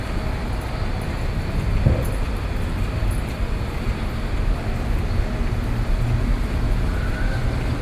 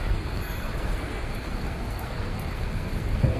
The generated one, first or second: second